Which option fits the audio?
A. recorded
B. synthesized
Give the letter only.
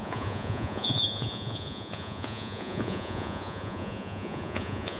B